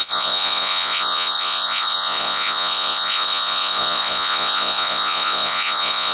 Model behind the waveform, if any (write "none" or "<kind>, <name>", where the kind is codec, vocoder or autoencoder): vocoder, Vocos